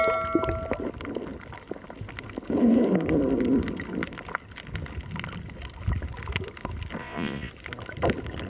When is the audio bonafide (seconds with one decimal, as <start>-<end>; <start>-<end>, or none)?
0.0-7.0; 7.5-8.5